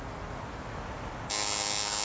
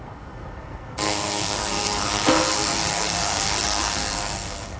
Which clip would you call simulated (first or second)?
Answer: second